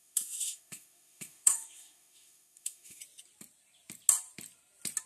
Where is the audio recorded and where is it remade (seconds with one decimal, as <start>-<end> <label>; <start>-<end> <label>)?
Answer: 0.0-3.0 remade; 3.0-5.1 recorded